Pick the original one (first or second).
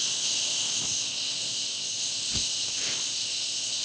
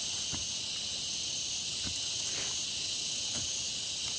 second